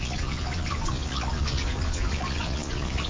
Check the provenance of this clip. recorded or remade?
remade